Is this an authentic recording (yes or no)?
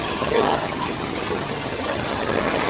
no